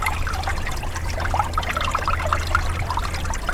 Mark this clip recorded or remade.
remade